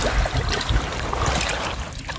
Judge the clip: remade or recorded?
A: recorded